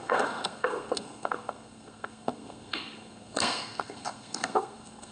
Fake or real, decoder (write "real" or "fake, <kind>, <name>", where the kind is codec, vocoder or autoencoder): fake, codec, SNAC